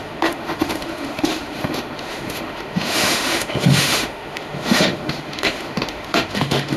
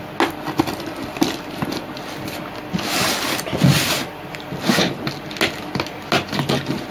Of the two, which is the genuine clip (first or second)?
second